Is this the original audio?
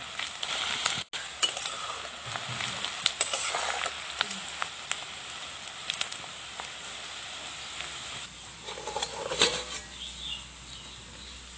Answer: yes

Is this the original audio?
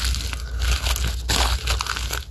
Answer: yes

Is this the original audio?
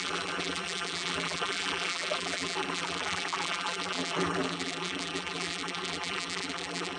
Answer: no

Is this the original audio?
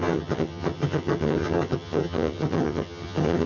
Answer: no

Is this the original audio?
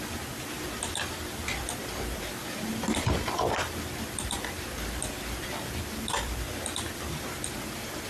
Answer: no